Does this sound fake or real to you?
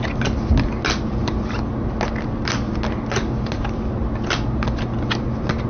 real